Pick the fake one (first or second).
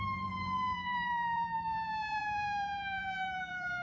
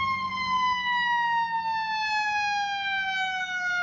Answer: first